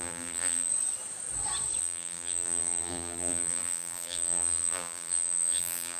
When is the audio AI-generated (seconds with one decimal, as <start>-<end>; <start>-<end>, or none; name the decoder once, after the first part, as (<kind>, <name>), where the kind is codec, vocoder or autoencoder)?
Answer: 0.0-0.7 (vocoder, BigVGAN v2); 1.8-6.0